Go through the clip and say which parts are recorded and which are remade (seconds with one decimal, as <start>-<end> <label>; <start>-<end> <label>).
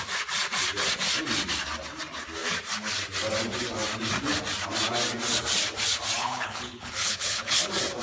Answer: 0.0-6.2 recorded; 6.2-7.6 remade; 7.6-8.0 recorded